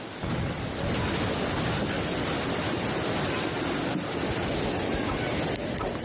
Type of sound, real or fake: real